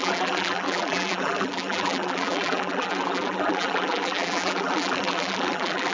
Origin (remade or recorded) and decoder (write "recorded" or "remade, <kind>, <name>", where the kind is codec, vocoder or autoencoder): remade, vocoder, BigVGAN v2